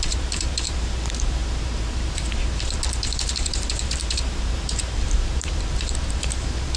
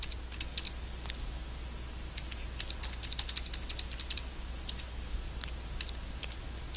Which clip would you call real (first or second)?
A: second